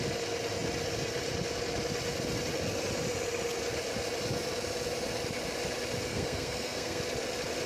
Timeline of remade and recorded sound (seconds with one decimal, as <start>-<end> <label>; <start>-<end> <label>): 0.0-6.1 recorded; 6.1-7.0 remade; 7.0-7.7 recorded